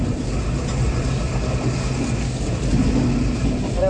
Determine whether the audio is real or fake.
real